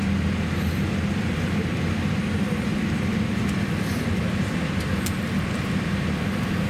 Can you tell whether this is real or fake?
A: fake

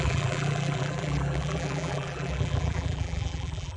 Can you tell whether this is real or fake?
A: fake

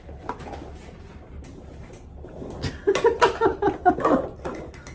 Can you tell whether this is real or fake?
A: real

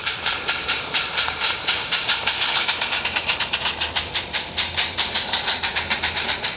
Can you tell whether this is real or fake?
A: fake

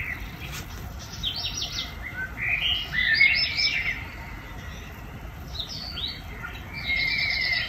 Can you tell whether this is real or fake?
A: real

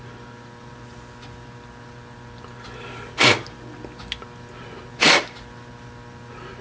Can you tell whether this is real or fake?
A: real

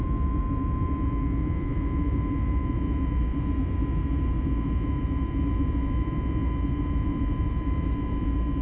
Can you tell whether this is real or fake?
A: fake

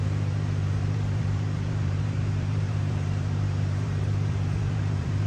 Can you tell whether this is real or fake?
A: fake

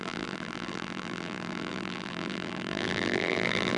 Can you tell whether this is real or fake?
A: fake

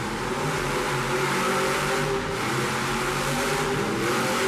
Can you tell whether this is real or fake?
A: real